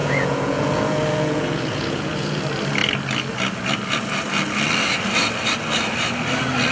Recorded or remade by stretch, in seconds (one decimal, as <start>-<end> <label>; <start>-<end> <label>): 0.0-2.4 remade; 2.4-6.7 recorded